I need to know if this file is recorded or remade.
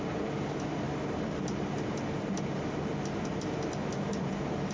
recorded